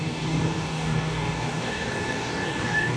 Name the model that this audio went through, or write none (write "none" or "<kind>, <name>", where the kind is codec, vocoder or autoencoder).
codec, DAC